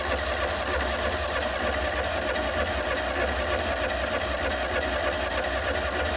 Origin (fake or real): real